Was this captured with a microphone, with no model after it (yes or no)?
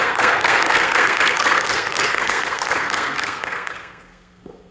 no